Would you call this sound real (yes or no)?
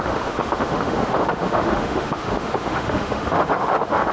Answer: no